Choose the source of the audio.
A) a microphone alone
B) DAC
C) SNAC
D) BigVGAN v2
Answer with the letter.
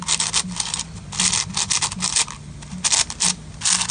A